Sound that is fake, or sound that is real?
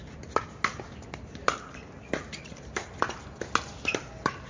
real